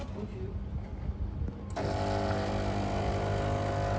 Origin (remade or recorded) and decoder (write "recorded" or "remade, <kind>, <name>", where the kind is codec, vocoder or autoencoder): recorded